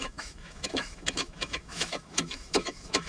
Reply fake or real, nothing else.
fake